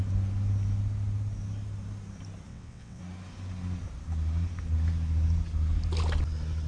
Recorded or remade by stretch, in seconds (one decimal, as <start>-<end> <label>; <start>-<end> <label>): 0.0-2.5 recorded; 2.5-3.0 remade; 3.0-6.7 recorded